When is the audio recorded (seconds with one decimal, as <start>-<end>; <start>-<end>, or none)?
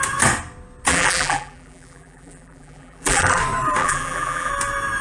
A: 0.0-0.9; 3.4-3.8; 4.5-5.0